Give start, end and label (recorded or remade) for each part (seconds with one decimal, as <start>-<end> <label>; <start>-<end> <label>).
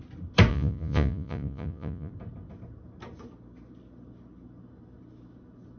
0.0-0.5 recorded; 0.5-2.1 remade; 2.1-5.8 recorded